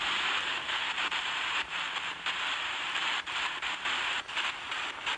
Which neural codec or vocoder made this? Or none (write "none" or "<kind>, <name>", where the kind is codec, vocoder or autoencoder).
vocoder, BigVGAN v2